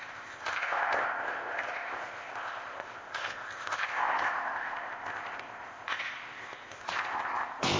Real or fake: fake